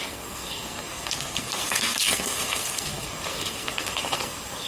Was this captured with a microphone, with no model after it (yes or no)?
no